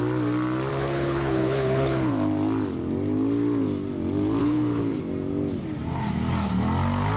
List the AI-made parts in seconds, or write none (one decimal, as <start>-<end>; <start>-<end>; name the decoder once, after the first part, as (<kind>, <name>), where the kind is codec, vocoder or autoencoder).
0.7-2.1 (codec, HILCodec); 4.4-5.0